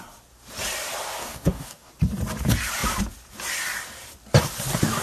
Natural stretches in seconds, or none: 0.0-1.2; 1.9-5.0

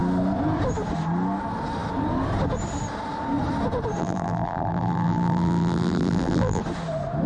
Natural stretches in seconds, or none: 0.0-4.0; 6.6-7.3

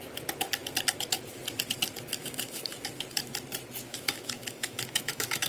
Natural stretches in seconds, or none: 0.0-2.2; 2.9-3.9

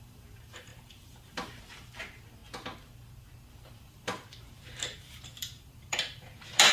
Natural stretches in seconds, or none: 2.4-3.5